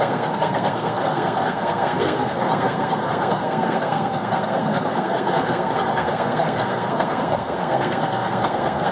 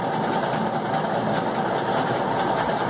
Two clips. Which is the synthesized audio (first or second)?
first